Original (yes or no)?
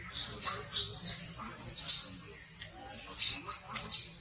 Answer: yes